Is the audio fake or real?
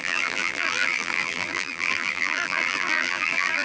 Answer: fake